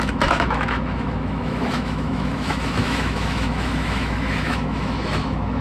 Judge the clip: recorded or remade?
remade